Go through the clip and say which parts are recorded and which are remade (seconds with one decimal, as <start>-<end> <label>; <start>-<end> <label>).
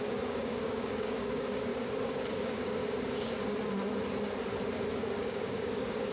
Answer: 0.0-1.7 remade; 1.7-2.3 recorded; 2.3-2.8 remade; 2.8-5.2 recorded; 5.2-6.1 remade